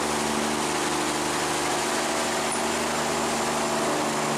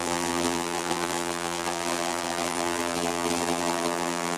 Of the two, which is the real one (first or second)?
first